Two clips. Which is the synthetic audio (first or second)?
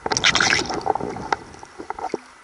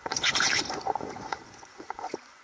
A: second